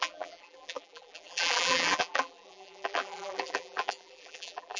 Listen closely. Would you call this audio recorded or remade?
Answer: remade